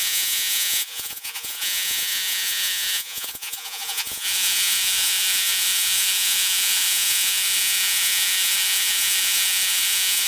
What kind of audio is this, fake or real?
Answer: fake